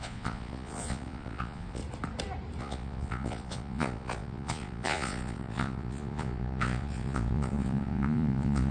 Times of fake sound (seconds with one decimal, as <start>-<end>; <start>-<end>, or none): 0.0-1.8; 2.6-8.7